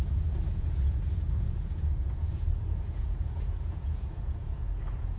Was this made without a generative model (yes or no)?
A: no